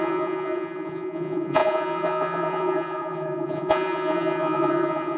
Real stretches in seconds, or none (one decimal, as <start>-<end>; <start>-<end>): none